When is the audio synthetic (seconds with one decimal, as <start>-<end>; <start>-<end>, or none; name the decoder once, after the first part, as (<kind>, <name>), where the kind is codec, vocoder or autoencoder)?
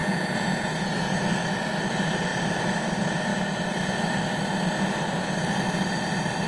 0.0-1.2 (vocoder, Vocos)